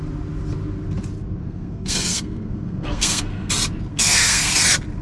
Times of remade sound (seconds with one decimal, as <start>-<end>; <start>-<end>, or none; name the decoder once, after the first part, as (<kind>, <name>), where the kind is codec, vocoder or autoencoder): 1.4-3.5 (codec, SNAC); 3.9-4.5